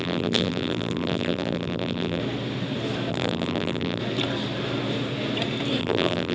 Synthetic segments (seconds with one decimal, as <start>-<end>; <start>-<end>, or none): 0.0-2.2; 3.1-4.0; 5.8-6.3